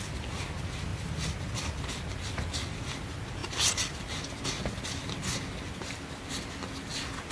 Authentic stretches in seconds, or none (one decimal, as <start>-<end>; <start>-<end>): 0.0-7.3

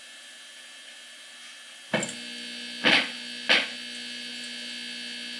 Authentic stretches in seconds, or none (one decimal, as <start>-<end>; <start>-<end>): 0.0-5.4

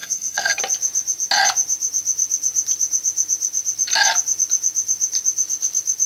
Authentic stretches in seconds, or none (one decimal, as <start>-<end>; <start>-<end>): 0.6-6.1

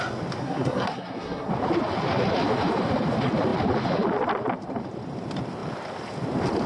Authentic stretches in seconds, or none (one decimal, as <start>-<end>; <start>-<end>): 0.0-0.4; 1.5-6.7

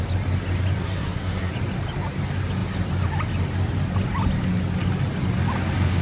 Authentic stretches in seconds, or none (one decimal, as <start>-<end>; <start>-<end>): 0.0-0.8; 1.5-6.0

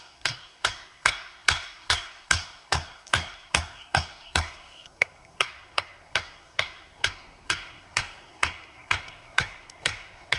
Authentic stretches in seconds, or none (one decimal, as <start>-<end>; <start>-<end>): none